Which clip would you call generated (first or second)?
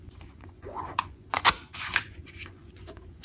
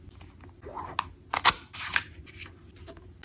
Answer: first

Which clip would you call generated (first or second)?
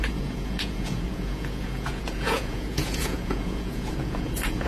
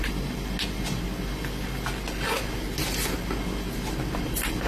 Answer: first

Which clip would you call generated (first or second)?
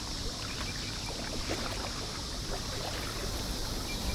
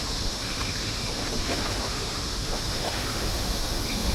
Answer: second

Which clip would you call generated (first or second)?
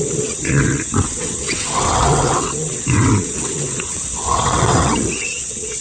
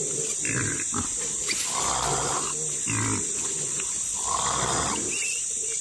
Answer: first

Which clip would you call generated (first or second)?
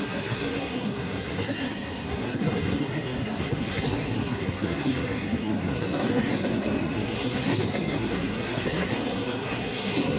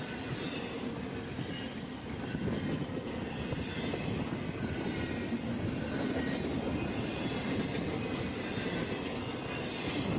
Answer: first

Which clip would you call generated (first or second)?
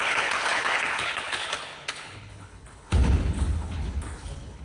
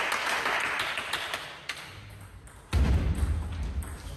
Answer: first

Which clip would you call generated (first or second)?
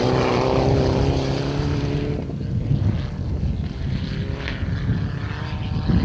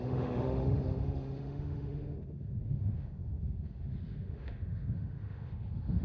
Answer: second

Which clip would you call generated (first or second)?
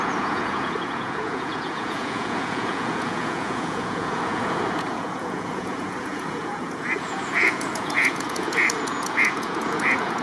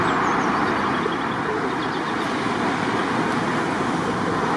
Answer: first